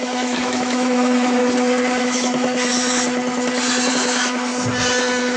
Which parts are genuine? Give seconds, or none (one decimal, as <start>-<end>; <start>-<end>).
1.4-2.0; 2.7-3.9; 4.5-5.4

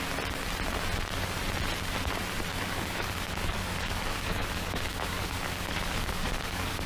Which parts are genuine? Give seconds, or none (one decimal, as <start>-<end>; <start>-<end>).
0.0-2.5

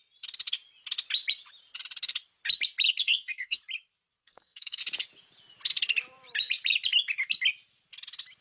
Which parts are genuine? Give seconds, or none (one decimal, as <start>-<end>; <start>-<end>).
0.0-3.0; 3.6-4.2; 4.8-8.4